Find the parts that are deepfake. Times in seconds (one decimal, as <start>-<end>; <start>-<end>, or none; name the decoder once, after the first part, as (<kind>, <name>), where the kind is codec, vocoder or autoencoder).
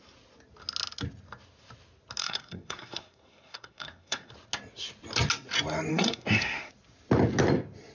2.2-4.3 (codec, SNAC); 5.9-6.7